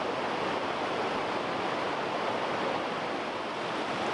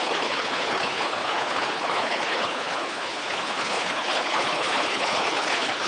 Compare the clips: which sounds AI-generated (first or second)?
second